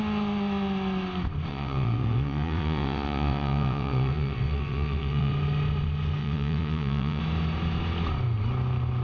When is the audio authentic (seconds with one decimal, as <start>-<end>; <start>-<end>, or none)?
0.0-1.5; 5.3-6.2; 7.2-9.0